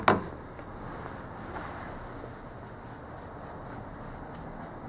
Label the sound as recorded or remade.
recorded